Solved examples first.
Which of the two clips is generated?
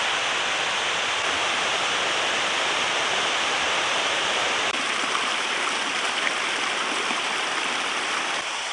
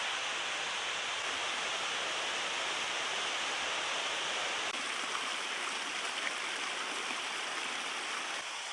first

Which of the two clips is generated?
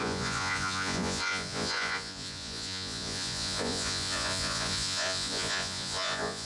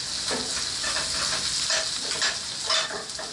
first